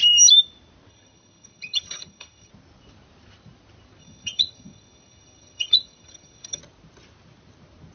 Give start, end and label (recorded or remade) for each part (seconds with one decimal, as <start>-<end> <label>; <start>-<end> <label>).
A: 0.0-0.9 recorded; 0.9-2.5 remade; 2.5-4.0 recorded; 4.0-6.6 remade; 6.6-7.9 recorded